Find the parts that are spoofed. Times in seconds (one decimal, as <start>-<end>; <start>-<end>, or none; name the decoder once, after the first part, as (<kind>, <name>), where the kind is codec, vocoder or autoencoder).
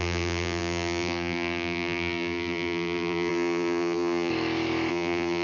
0.0-4.3 (vocoder, BigVGAN v2); 4.9-5.4